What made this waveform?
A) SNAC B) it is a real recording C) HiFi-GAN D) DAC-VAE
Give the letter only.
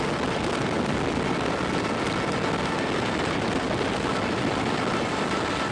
B